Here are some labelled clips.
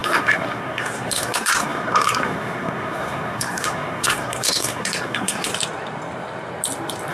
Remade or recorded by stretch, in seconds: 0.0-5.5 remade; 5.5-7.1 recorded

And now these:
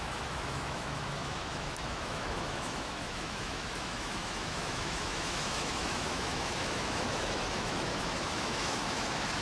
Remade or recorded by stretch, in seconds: 0.0-9.4 remade